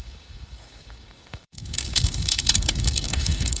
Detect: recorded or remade remade